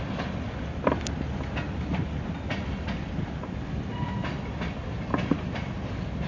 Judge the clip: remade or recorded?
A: recorded